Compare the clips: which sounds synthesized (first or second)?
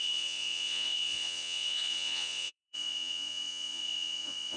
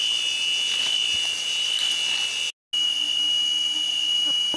first